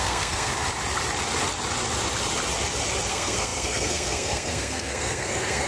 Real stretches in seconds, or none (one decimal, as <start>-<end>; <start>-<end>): 0.5-3.1